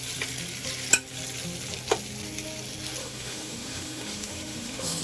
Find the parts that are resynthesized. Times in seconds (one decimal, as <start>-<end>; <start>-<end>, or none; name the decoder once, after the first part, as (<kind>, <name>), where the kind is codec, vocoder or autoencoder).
3.0-5.0 (autoencoder, DAC-VAE)

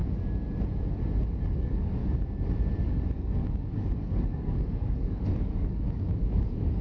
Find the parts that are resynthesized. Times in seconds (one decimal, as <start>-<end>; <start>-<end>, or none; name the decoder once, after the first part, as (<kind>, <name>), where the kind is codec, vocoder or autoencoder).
1.4-2.0 (codec, DAC); 2.8-6.8

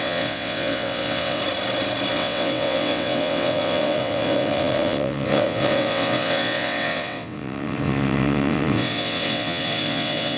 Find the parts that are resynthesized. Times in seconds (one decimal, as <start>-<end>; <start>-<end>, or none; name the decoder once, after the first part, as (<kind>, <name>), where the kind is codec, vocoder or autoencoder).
0.0-1.4 (vocoder, WaveNeXt); 2.1-10.4